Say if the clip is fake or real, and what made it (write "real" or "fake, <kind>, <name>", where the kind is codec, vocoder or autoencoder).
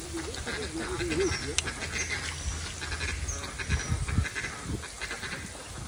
real